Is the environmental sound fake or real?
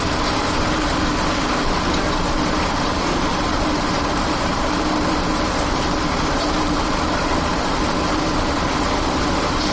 fake